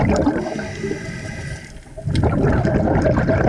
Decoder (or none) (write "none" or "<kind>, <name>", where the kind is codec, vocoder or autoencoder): none